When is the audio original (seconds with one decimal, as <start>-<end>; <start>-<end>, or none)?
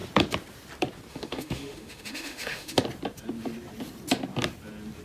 0.0-1.1; 2.8-5.0